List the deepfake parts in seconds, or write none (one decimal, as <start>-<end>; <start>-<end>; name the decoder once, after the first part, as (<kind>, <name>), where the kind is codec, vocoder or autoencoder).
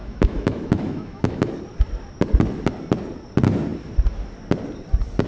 0.0-1.5 (autoencoder, DAC-VAE)